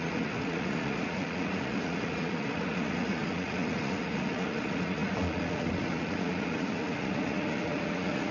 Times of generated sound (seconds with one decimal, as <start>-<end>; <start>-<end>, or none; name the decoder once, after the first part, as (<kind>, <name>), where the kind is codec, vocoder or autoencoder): 0.0-8.3 (vocoder, Vocos)